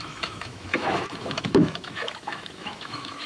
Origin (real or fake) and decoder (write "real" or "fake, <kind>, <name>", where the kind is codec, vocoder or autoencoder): fake, autoencoder, DAC-VAE